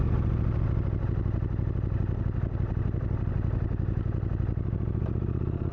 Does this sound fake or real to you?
real